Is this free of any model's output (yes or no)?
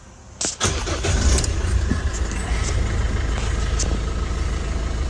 yes